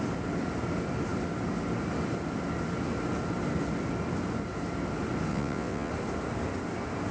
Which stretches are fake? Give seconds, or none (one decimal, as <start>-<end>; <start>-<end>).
5.3-5.9